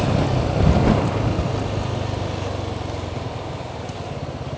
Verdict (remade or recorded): recorded